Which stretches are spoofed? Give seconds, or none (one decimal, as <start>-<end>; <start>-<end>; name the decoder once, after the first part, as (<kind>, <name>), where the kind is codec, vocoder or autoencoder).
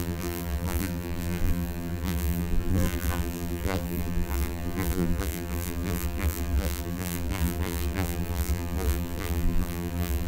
0.0-10.3 (vocoder, BigVGAN v2)